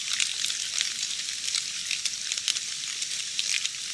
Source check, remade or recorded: recorded